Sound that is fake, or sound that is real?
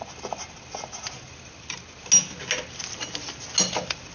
real